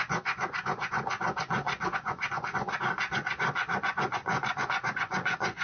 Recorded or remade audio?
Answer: remade